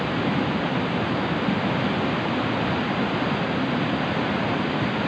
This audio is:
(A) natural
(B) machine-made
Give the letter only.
A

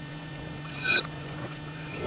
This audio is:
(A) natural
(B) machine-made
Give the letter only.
B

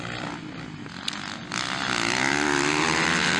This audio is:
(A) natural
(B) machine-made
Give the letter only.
A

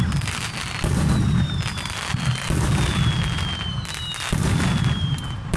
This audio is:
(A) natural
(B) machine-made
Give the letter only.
A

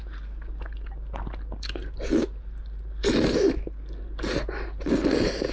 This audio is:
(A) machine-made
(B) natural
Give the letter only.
B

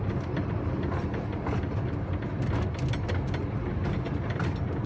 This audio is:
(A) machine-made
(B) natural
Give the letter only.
B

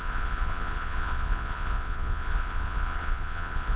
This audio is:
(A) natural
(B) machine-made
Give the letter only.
B